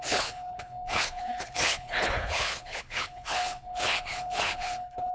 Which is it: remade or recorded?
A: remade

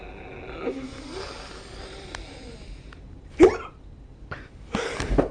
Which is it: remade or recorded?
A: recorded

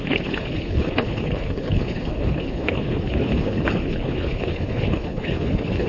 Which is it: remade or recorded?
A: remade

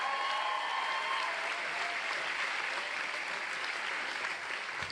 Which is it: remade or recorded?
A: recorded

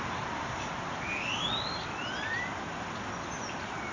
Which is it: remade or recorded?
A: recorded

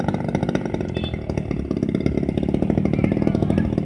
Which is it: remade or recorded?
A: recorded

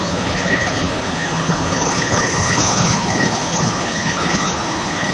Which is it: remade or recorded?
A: remade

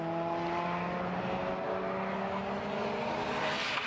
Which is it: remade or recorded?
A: recorded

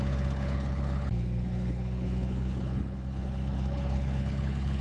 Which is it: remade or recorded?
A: remade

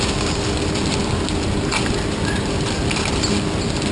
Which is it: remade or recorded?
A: recorded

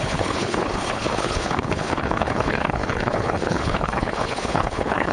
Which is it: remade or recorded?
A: remade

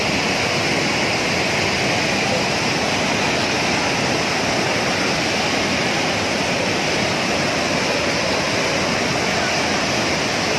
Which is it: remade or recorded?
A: recorded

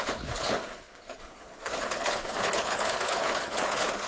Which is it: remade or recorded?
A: remade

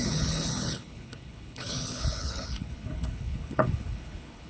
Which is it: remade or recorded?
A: remade